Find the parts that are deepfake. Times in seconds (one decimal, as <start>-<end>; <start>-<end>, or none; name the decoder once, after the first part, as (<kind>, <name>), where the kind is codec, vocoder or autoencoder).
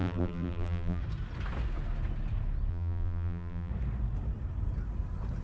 0.0-1.0 (vocoder, BigVGAN v2); 2.7-3.7